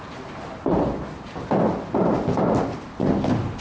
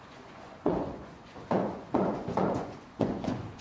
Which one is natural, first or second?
first